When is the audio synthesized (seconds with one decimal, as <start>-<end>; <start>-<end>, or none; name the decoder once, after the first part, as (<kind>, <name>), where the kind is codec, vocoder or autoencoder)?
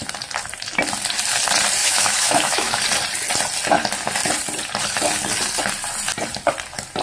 1.8-2.8 (autoencoder, DAC-VAE)